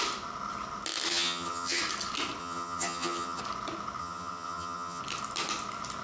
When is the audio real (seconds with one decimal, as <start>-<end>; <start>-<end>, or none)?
0.0-1.1; 1.8-2.4; 3.4-4.0; 5.0-6.0